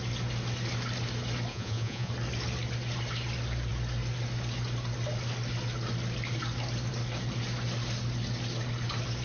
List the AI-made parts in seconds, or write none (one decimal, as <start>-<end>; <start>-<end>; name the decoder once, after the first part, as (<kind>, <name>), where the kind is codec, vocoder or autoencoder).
1.5-2.1 (vocoder, Vocos)

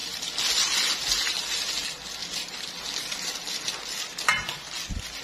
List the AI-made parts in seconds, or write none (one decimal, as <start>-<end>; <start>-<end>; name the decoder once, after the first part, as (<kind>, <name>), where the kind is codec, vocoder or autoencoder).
2.2-2.7 (vocoder, BigVGAN v2)

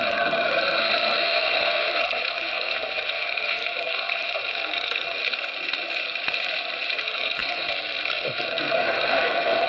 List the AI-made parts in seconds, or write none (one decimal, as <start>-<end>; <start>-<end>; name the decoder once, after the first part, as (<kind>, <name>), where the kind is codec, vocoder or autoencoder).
0.0-5.2 (codec, SNAC); 7.0-9.7